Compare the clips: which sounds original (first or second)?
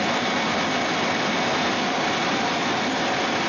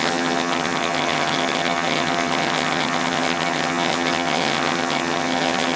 first